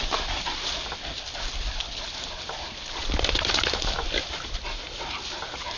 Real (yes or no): yes